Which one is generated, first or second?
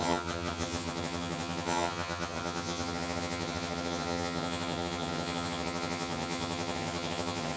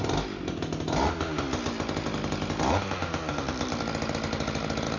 first